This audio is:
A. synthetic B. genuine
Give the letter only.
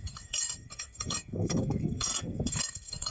A